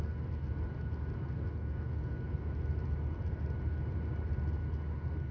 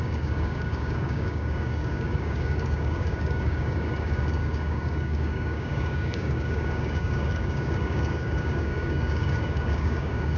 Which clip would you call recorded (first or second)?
first